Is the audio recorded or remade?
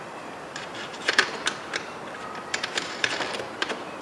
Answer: remade